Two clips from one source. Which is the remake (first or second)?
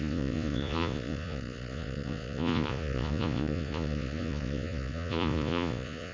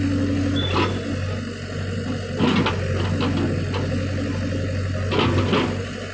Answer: first